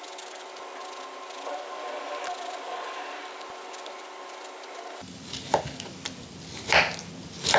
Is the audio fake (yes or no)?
no